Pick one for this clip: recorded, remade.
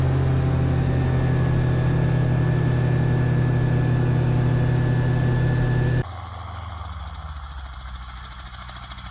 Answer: recorded